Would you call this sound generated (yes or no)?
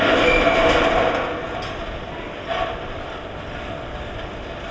no